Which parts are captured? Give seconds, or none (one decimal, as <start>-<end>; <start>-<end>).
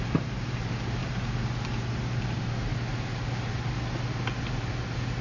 1.0-2.2; 2.7-4.5